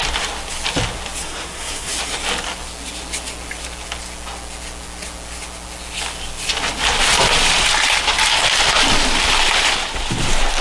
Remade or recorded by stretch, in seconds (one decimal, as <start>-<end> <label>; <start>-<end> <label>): 0.0-1.2 recorded; 1.2-1.9 remade; 1.9-10.6 recorded